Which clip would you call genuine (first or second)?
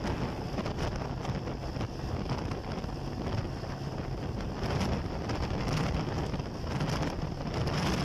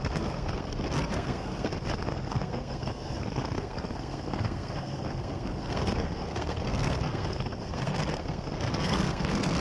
first